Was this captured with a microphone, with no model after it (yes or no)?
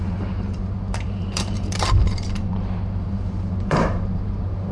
no